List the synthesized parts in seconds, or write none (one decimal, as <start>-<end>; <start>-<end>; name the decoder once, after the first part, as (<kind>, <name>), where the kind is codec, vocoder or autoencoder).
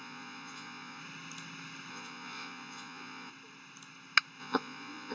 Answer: 0.0-1.0 (vocoder, Vocos); 1.9-3.3; 4.4-5.1